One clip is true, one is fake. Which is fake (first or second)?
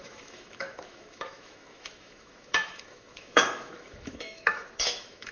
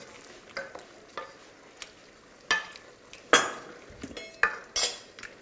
first